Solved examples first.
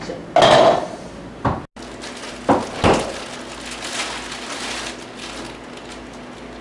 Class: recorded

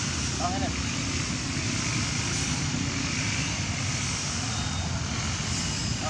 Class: recorded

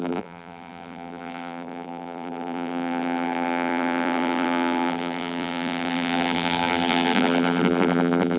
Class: remade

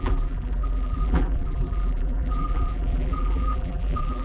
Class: remade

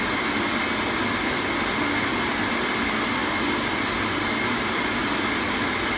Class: recorded